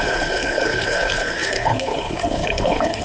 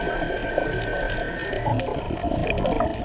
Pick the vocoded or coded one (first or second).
first